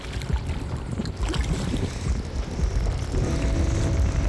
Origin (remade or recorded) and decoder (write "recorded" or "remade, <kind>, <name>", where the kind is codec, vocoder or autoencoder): recorded